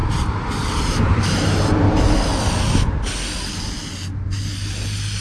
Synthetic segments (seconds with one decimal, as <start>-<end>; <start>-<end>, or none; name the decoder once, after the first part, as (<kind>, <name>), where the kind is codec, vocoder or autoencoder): 0.0-1.3 (vocoder, BigVGAN v2)

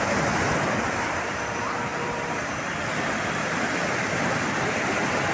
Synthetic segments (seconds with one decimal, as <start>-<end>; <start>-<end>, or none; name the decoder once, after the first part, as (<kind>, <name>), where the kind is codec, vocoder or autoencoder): 0.0-5.3 (vocoder, BigVGAN v2)

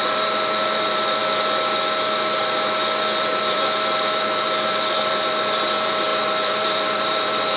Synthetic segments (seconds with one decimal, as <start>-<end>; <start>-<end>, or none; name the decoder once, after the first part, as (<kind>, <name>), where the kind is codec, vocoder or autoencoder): 0.0-1.2 (vocoder, BigVGAN v2); 3.4-7.6

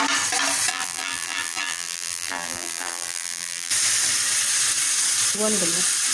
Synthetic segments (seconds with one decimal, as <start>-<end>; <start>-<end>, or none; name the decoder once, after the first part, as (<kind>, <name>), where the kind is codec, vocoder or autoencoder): 0.7-3.7 (vocoder, BigVGAN v2)

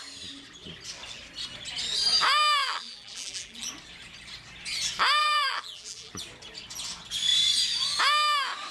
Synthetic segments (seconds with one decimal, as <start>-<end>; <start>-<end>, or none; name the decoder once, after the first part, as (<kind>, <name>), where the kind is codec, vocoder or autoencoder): 2.6-3.7 (vocoder, BigVGAN v2); 5.2-6.1